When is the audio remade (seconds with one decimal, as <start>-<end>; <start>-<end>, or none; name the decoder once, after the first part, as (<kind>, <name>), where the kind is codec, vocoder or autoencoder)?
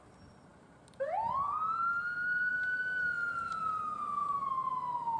none